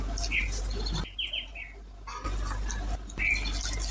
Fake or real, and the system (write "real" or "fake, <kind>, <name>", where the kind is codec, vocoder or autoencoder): real